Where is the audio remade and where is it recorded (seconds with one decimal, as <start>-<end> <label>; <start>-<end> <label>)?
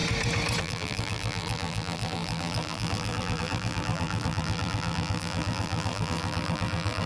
0.0-0.6 recorded; 0.6-7.1 remade